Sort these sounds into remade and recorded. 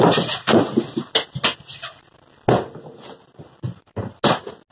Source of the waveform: recorded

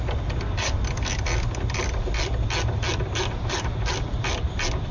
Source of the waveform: recorded